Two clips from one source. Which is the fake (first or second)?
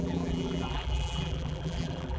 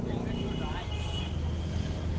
first